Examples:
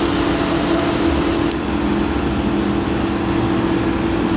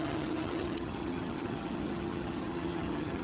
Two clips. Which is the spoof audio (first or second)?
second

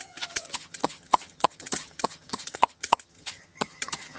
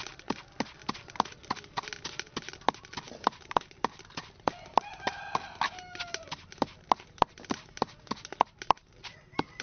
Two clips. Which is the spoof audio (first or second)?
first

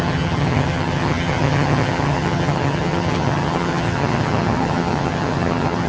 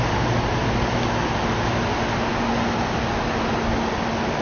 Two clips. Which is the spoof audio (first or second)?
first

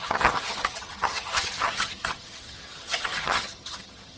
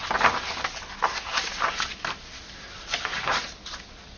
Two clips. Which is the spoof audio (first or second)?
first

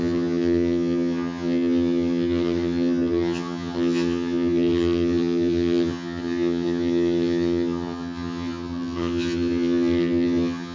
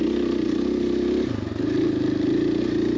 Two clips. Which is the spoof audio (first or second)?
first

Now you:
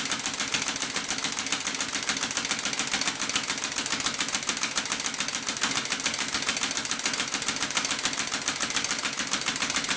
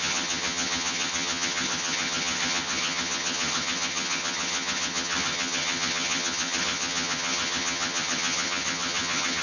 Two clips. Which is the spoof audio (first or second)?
second